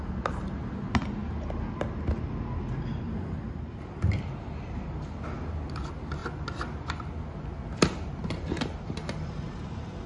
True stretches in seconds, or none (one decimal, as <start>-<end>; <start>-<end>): 0.0-10.1